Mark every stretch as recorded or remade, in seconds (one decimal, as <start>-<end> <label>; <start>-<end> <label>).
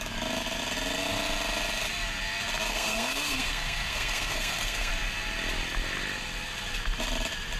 0.0-2.7 recorded; 2.7-4.9 remade; 4.9-7.6 recorded